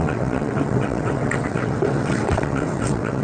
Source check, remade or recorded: remade